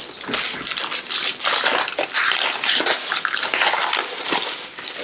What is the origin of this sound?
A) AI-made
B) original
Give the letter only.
B